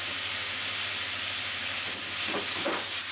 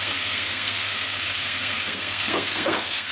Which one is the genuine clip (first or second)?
first